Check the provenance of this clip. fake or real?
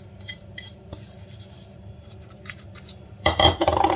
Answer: fake